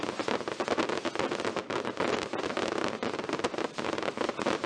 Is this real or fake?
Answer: real